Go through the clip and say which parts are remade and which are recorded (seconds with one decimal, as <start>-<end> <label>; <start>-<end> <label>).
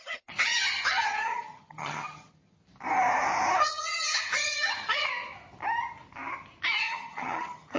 0.0-2.6 remade; 2.6-3.6 recorded; 3.6-5.1 remade; 5.1-6.8 recorded; 6.8-7.8 remade